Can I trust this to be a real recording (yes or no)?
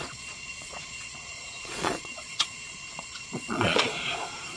no